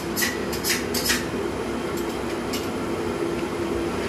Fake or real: real